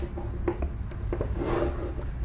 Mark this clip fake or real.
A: real